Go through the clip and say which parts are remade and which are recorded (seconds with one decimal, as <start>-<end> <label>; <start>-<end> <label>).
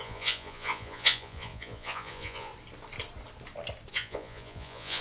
0.0-2.5 remade; 2.5-3.9 recorded; 3.9-5.0 remade